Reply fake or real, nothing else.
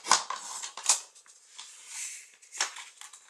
real